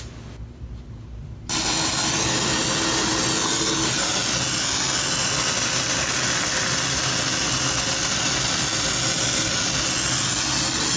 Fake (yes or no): no